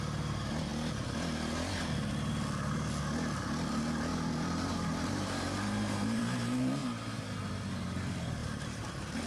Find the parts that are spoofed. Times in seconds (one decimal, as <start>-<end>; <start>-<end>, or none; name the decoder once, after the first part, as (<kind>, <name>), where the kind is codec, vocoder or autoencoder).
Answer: 4.1-6.2 (vocoder, BigVGAN v2); 6.8-7.5; 8.4-9.3